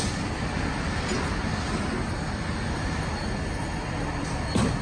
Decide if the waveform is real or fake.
real